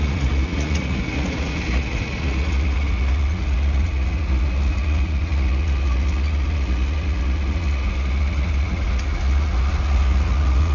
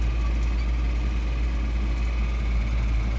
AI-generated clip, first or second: first